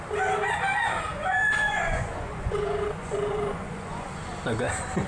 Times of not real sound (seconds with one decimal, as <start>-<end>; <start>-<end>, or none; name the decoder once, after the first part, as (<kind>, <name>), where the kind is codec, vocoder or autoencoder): 1.1-4.2 (vocoder, Vocos)